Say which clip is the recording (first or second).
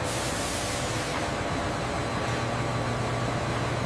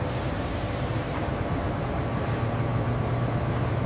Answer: first